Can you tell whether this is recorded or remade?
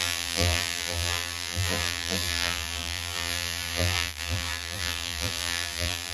remade